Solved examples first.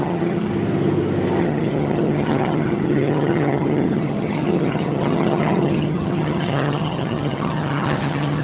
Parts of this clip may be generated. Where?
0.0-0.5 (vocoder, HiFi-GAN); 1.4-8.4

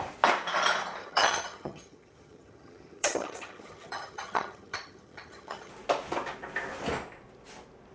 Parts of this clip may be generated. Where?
1.0-5.7 (vocoder, HiFi-GAN)

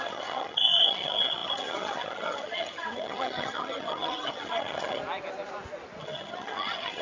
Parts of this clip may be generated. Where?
0.0-5.0 (vocoder, HiFi-GAN); 6.0-7.0